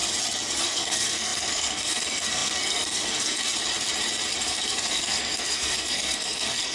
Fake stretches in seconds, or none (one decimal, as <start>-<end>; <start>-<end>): 0.6-3.5; 4.4-6.7